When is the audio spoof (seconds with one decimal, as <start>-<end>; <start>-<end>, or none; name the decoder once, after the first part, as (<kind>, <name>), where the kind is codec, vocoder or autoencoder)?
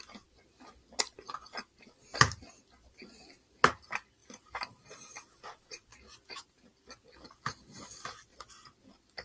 4.2-5.1 (vocoder, BigVGAN v2); 5.9-6.7